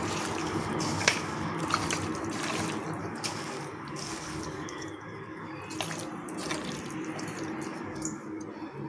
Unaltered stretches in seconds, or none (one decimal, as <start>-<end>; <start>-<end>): 0.0-0.4; 1.6-3.0; 5.6-7.7; 8.4-8.9